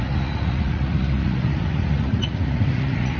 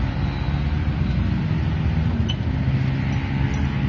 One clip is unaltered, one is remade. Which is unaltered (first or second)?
second